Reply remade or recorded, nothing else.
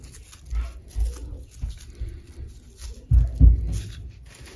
recorded